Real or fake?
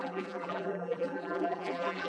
fake